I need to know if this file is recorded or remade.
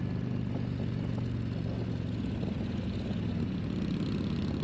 recorded